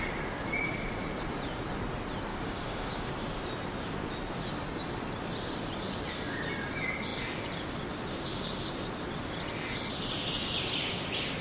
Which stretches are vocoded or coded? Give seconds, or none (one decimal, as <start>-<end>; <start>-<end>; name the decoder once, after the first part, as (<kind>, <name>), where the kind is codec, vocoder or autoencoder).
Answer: 2.3-3.1 (codec, DAC)